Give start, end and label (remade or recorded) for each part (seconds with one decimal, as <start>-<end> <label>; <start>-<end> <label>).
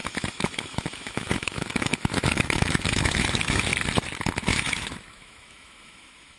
0.0-3.7 remade; 3.7-4.4 recorded; 4.4-6.4 remade